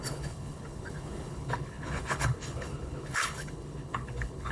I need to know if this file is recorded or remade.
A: remade